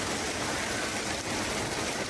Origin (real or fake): fake